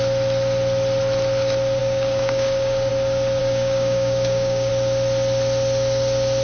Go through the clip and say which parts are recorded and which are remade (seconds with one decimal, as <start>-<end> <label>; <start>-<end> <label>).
0.0-1.8 recorded; 1.8-2.9 remade; 2.9-3.4 recorded; 3.4-4.7 remade; 4.7-6.4 recorded